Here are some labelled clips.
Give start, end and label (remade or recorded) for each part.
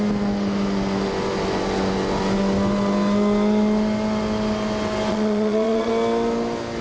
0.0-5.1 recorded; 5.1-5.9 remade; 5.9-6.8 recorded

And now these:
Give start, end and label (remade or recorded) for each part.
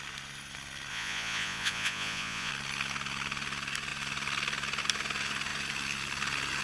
0.0-0.9 recorded; 0.9-2.5 remade; 2.5-6.6 recorded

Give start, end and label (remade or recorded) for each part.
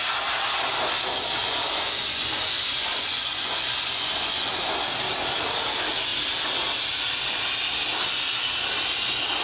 0.0-1.4 recorded; 1.4-4.5 remade; 4.5-9.4 recorded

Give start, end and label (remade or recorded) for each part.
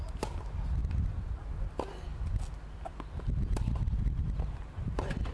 0.0-5.3 recorded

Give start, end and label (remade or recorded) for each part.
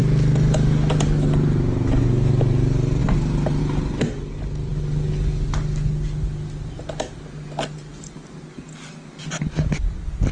0.0-10.3 recorded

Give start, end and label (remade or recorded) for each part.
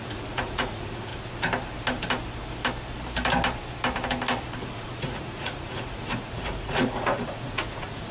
0.0-1.1 remade; 1.1-4.6 recorded; 4.6-8.1 remade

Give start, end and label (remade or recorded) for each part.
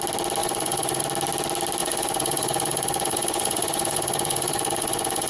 0.0-0.4 recorded; 0.4-1.0 remade; 1.0-1.8 recorded; 1.8-5.3 remade